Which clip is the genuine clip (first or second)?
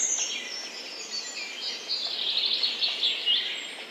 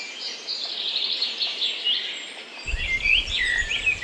first